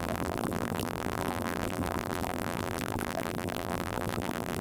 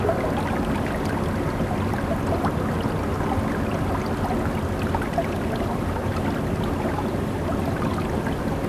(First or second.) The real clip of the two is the second